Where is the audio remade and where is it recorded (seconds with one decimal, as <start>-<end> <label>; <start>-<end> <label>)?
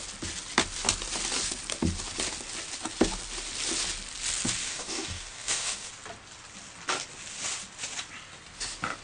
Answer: 0.0-4.6 recorded; 4.6-5.9 remade; 5.9-9.0 recorded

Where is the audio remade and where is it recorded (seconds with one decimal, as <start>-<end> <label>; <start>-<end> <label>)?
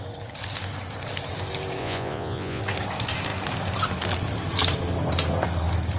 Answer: 0.0-1.8 recorded; 1.8-2.6 remade; 2.6-6.0 recorded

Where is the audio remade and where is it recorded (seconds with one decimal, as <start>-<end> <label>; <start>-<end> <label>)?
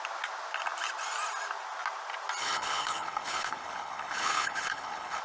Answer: 0.0-2.4 recorded; 2.4-5.2 remade